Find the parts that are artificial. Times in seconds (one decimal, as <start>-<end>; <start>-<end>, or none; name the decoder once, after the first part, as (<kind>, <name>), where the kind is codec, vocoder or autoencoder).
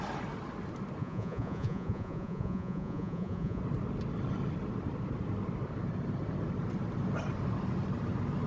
1.0-3.6 (vocoder, Vocos)